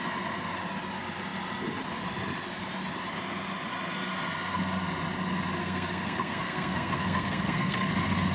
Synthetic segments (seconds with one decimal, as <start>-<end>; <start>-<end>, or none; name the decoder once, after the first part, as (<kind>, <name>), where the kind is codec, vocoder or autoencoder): 5.6-7.9 (codec, SNAC)